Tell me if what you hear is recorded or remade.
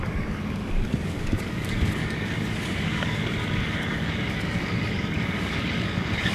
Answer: remade